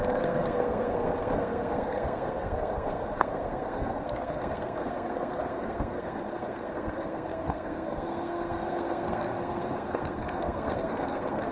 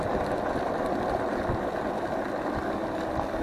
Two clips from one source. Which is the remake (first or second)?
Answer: first